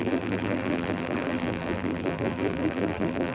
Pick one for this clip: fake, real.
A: fake